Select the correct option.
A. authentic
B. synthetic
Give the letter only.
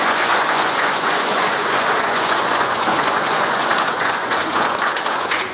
B